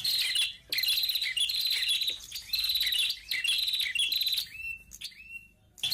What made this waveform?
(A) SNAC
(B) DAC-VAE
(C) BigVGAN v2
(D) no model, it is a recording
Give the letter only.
D